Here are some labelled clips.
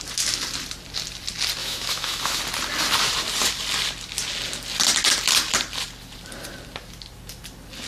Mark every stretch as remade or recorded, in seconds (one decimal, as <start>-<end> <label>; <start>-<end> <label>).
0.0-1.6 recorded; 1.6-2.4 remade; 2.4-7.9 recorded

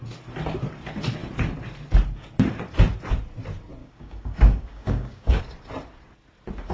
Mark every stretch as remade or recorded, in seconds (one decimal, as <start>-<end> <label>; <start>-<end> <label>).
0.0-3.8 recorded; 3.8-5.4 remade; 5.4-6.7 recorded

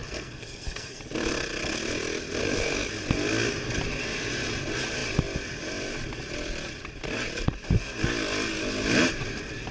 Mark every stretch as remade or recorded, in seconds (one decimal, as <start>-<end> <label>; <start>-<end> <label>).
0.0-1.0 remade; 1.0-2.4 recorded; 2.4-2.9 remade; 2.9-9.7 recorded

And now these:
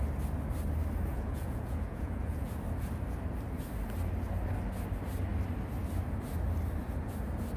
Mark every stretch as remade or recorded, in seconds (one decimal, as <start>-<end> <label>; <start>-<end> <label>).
0.0-1.1 recorded; 1.1-2.5 remade; 2.5-7.6 recorded

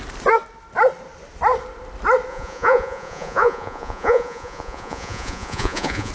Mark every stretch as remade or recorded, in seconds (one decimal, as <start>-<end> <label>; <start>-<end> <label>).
0.0-2.3 recorded; 2.3-6.1 remade